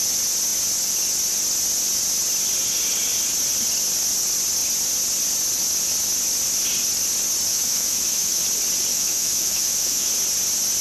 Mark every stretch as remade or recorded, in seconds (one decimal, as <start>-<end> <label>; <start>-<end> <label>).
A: 0.0-7.5 recorded; 7.5-8.4 remade; 8.4-8.9 recorded; 8.9-10.1 remade; 10.1-10.8 recorded